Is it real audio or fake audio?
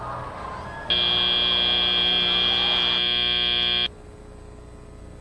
real